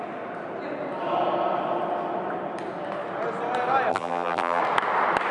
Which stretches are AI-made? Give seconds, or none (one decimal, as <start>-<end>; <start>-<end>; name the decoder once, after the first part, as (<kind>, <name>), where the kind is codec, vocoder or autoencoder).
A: 3.9-4.6 (vocoder, BigVGAN v2)